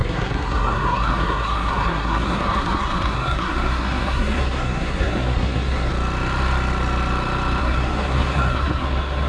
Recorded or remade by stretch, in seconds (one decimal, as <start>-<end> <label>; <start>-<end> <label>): 0.0-5.9 remade; 5.9-7.6 recorded; 7.6-9.3 remade